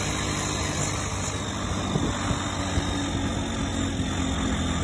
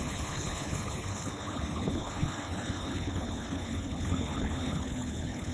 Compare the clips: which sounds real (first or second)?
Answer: first